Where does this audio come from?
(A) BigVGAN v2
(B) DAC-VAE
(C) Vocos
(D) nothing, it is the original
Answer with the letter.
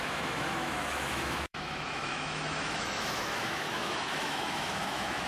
B